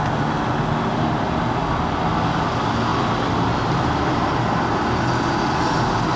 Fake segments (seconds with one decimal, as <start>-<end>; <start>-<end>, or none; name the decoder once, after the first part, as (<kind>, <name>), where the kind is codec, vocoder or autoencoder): none